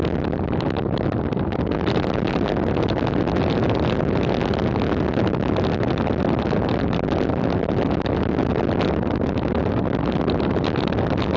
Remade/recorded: recorded